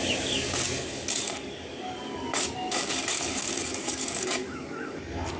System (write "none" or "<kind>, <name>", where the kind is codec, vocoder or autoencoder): codec, DAC